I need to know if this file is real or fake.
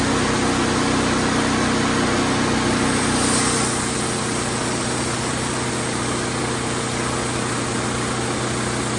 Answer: real